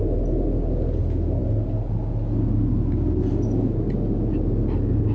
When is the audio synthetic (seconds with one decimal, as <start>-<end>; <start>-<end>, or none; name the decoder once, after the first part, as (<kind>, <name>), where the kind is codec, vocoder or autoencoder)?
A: none